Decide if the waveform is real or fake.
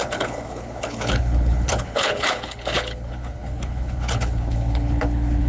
fake